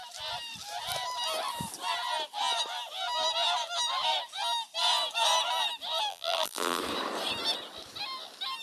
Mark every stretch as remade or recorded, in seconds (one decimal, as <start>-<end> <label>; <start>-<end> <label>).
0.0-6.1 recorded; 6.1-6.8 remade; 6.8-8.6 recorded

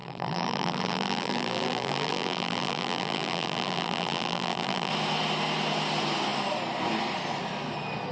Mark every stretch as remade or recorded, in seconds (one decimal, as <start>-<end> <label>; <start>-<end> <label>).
0.0-4.9 remade; 4.9-8.1 recorded

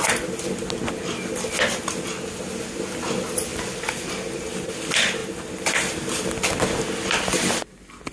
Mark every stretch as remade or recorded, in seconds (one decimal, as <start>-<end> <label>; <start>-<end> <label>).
0.0-3.5 recorded; 3.5-4.7 remade; 4.7-5.2 recorded; 5.2-6.4 remade; 6.4-8.1 recorded

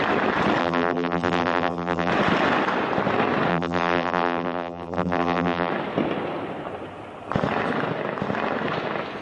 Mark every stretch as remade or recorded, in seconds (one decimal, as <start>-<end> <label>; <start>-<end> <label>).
0.0-0.6 recorded; 0.6-2.1 remade; 2.1-3.5 recorded; 3.5-5.7 remade; 5.7-9.2 recorded

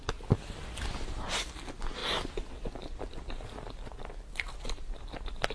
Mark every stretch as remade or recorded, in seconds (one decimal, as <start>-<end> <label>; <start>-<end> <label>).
0.0-5.5 recorded

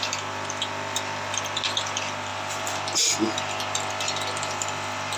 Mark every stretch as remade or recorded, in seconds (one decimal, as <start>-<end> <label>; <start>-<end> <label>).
0.0-5.2 recorded